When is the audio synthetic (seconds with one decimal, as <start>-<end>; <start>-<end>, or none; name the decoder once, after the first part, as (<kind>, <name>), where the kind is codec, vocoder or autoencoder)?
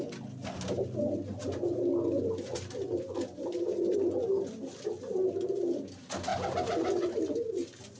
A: none